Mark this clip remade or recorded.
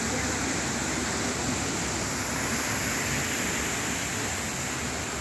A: recorded